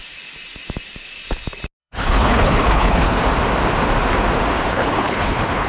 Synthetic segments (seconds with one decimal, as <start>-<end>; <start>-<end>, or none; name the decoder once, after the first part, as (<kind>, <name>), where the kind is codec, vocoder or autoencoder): 1.8-3.2 (codec, HILCodec); 4.7-5.7